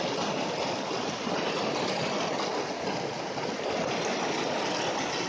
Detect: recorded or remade recorded